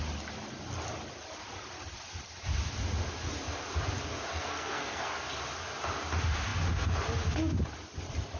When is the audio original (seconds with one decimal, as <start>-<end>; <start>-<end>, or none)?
0.0-4.3; 5.3-8.4